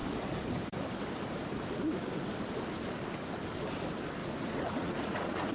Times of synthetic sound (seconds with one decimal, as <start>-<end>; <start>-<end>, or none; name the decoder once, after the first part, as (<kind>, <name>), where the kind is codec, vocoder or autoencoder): 4.2-5.5 (vocoder, Vocos)